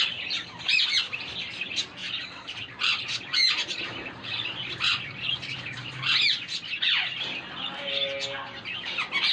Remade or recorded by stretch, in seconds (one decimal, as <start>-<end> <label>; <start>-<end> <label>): 0.0-9.3 recorded